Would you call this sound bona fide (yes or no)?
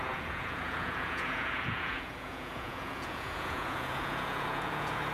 no